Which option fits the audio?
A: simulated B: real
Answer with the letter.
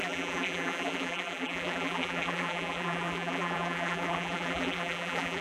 A